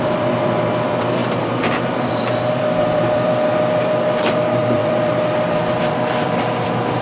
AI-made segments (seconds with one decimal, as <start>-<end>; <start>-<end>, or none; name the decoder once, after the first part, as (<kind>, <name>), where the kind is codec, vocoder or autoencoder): 0.0-7.0 (vocoder, BigVGAN v2)